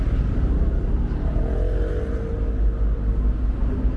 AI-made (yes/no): no